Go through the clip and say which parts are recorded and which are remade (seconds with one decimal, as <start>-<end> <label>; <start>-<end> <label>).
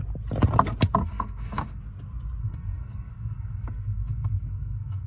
0.0-1.0 recorded; 1.0-1.8 remade; 1.8-2.4 recorded; 2.4-5.1 remade